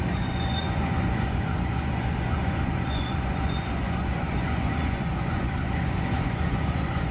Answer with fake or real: fake